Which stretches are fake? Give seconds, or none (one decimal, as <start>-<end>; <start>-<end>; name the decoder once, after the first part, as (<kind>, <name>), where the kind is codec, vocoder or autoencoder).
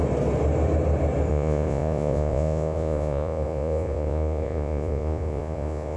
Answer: 1.3-6.0 (vocoder, Vocos)